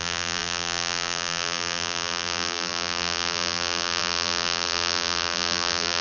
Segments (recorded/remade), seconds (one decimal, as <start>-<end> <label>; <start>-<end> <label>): 0.0-6.0 remade